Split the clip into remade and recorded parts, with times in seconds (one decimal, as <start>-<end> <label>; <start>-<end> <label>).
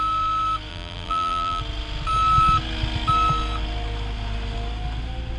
0.0-0.7 recorded; 0.7-1.6 remade; 1.6-5.4 recorded